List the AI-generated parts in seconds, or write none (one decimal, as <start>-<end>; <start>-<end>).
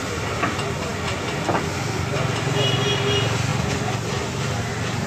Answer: none